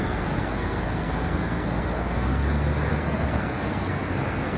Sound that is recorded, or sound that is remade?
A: remade